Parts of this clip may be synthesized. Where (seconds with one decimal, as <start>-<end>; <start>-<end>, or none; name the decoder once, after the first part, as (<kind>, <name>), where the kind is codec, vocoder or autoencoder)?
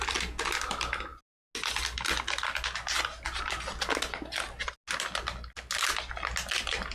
none